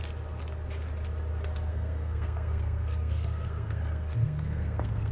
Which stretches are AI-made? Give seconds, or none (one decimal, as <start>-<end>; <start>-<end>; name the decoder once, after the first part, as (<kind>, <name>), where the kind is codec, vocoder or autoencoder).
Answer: 1.7-5.1 (codec, SNAC)